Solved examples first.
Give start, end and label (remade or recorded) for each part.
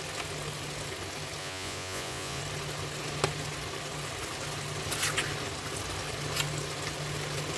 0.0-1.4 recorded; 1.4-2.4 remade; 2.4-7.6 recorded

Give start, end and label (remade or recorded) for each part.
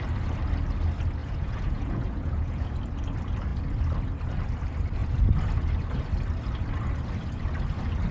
0.0-1.2 recorded; 1.2-2.8 remade; 2.8-8.1 recorded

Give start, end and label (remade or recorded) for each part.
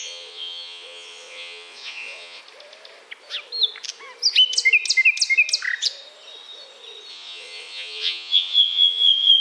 0.0-2.4 remade; 2.4-7.1 recorded; 7.1-9.4 remade